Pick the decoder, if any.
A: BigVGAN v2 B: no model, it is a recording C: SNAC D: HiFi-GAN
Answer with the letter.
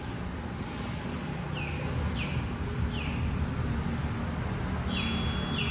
B